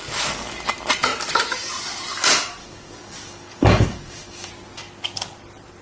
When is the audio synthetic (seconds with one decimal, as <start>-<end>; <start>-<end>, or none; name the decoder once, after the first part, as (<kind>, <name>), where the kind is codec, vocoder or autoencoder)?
2.6-4.5 (codec, DAC)